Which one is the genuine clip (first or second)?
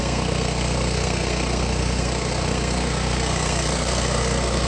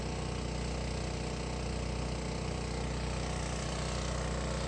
second